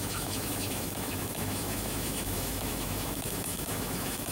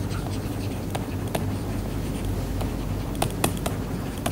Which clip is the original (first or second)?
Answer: second